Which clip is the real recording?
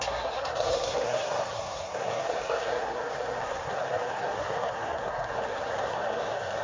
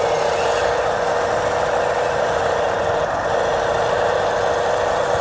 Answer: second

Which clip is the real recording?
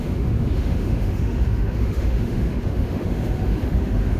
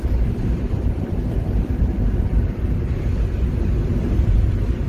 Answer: second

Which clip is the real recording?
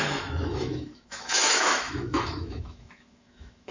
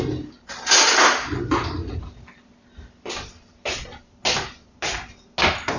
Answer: second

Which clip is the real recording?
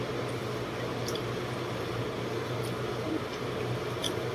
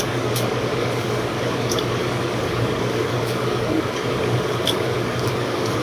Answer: first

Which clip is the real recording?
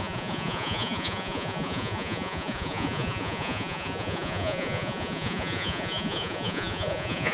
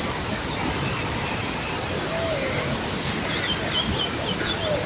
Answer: second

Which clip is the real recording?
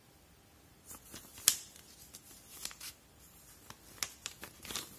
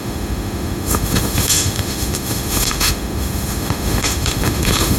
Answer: first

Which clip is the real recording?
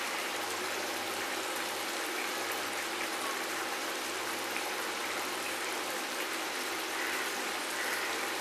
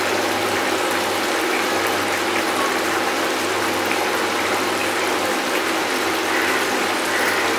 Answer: second